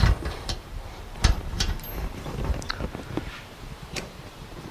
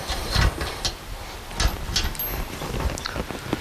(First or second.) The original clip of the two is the second